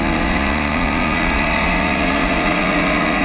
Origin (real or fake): fake